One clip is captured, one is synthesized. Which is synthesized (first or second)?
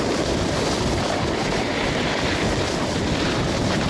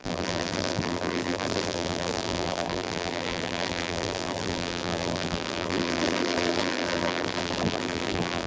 second